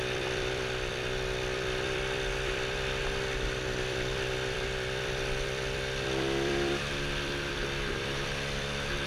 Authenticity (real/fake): fake